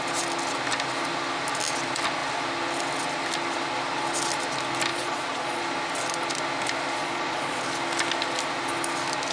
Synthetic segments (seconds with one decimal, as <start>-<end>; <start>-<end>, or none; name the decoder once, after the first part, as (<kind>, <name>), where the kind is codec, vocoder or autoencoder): 4.9-5.6 (vocoder, Vocos); 7.0-7.6